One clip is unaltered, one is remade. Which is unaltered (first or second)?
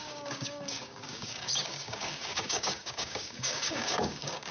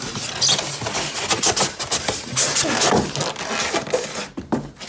second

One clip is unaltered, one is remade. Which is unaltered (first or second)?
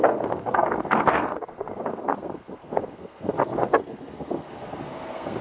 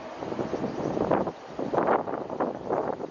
second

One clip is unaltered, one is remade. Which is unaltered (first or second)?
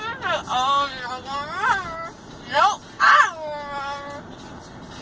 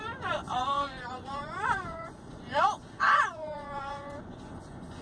first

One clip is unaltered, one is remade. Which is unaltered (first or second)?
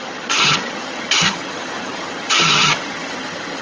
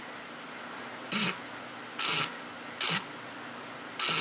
second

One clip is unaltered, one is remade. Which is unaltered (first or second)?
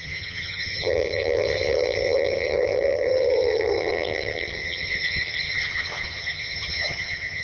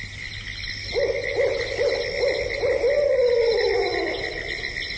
second